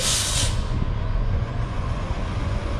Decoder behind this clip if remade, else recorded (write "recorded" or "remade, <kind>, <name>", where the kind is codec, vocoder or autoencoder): remade, vocoder, Vocos